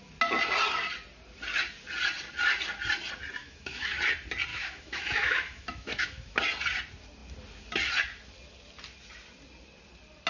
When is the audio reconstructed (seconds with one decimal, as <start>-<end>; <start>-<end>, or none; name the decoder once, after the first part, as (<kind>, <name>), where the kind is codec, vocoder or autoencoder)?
3.4-4.0 (autoencoder, DAC-VAE); 4.5-6.4